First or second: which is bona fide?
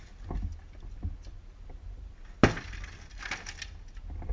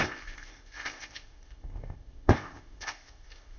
first